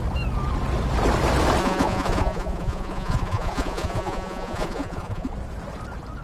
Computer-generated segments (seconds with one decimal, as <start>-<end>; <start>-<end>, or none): 1.6-5.3

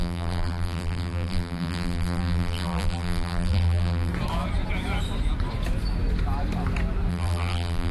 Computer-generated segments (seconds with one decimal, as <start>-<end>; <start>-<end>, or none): 0.0-4.1; 7.1-7.9

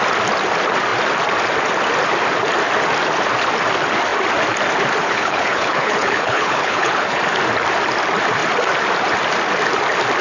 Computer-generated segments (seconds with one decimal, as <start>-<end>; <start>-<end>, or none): 5.0-7.2

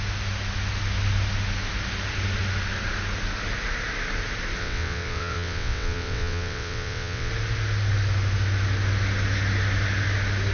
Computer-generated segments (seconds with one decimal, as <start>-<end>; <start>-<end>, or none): 4.6-7.3

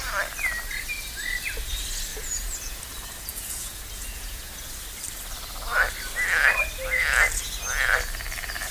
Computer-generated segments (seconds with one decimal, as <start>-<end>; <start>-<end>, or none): 2.1-2.8; 3.3-4.5